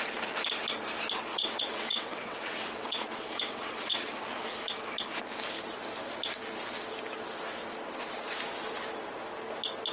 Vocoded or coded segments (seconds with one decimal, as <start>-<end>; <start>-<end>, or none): 1.3-4.1